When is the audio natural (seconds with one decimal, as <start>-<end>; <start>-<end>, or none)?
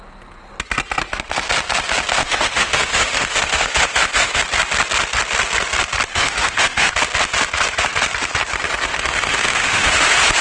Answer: 0.0-2.2; 4.4-6.1; 6.9-8.9; 9.9-10.4